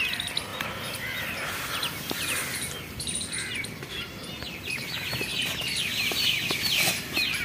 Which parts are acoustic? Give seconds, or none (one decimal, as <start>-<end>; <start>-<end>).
0.0-7.4